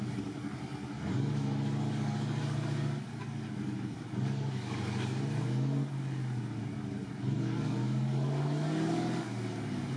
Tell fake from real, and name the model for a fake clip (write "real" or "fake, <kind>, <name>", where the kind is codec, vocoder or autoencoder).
fake, codec, DAC